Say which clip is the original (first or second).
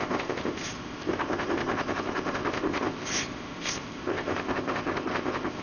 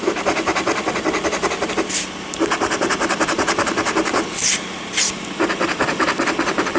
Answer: second